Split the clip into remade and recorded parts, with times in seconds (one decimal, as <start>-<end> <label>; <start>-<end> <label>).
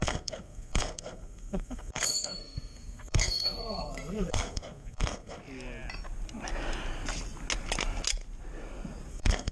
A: 0.0-5.4 remade; 5.4-9.1 recorded; 9.1-9.5 remade